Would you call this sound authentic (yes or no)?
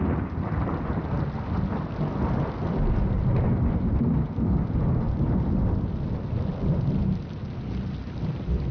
yes